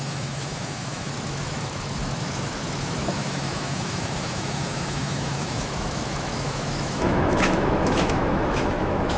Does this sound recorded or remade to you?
remade